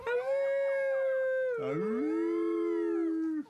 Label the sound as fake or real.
real